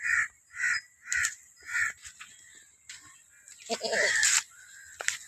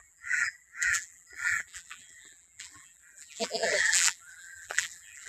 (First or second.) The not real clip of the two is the second